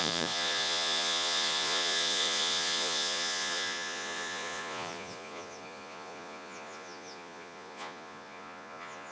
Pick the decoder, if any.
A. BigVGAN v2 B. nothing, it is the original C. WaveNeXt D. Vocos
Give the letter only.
D